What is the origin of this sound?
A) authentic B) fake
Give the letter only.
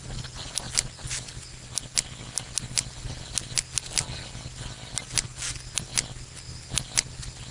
A